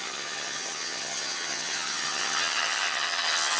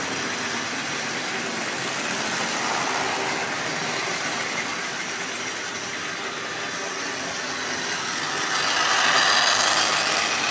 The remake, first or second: first